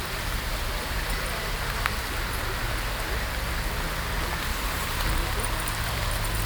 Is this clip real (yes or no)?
yes